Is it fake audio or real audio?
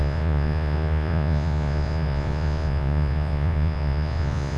fake